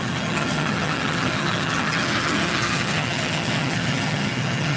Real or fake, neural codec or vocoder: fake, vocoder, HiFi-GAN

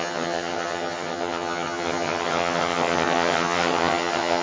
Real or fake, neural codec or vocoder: fake, vocoder, HiFi-GAN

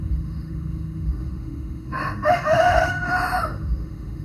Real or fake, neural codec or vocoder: fake, autoencoder, DAC-VAE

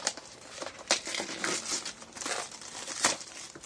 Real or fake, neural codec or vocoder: fake, vocoder, BigVGAN v2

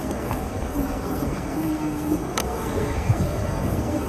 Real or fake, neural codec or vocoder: fake, codec, SNAC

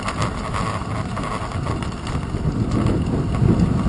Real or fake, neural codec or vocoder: real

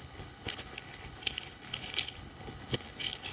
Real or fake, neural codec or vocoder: fake, codec, HILCodec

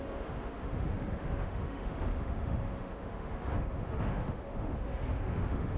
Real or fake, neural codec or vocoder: fake, autoencoder, DAC-VAE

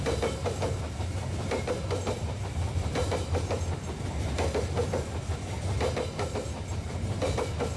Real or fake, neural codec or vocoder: real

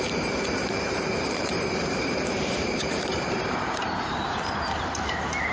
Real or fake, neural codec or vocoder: fake, vocoder, BigVGAN v2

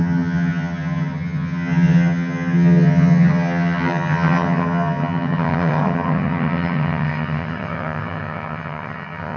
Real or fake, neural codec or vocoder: fake, vocoder, HiFi-GAN